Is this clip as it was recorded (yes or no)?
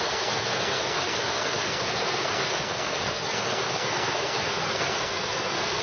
no